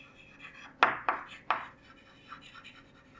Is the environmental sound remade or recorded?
recorded